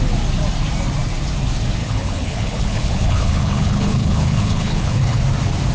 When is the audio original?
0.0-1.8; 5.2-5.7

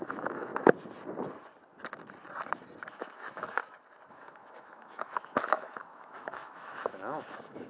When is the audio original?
0.5-2.9; 3.6-4.1

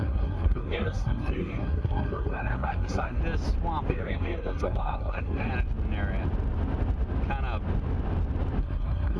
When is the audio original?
3.2-3.9; 5.5-8.6